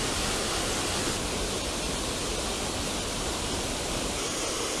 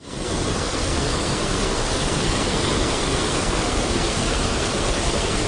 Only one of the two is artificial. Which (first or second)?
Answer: second